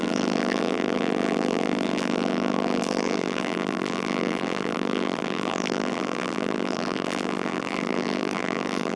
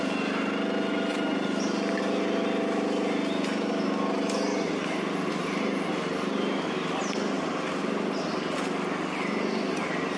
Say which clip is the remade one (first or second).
first